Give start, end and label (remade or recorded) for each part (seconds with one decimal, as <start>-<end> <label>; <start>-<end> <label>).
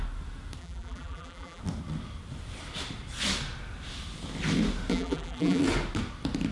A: 0.0-0.6 recorded; 0.6-1.6 remade; 1.6-4.9 recorded; 4.9-5.6 remade; 5.6-6.5 recorded